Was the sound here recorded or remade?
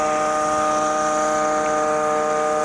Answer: recorded